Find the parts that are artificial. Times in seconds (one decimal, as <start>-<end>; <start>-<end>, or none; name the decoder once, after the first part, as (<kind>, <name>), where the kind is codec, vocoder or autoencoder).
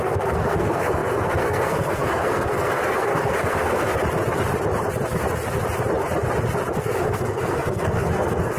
0.0-3.9 (codec, SNAC); 6.8-8.6